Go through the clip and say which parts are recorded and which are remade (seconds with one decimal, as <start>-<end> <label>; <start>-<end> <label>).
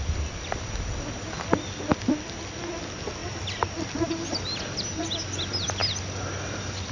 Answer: 0.0-6.9 recorded